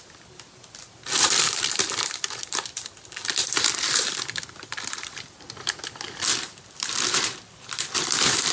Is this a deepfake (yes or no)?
yes